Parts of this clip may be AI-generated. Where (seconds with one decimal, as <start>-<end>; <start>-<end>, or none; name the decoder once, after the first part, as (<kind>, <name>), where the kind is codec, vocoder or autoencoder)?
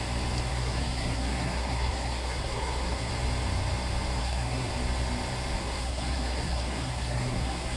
0.5-3.1 (codec, SNAC); 4.2-4.7; 5.6-7.8